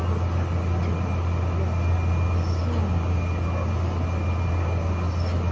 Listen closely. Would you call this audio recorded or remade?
recorded